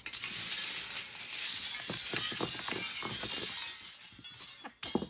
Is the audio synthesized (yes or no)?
no